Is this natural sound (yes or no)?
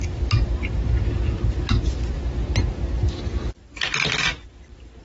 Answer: yes